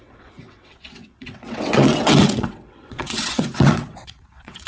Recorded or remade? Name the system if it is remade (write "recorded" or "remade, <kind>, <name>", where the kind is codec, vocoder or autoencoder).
remade, vocoder, WaveNeXt